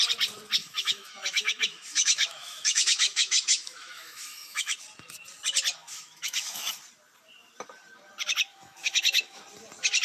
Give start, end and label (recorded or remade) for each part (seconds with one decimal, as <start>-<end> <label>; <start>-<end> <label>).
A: 0.0-0.6 recorded; 0.6-4.8 remade; 4.8-5.8 recorded; 5.8-6.7 remade; 6.7-8.5 recorded; 8.5-9.4 remade; 9.4-10.0 recorded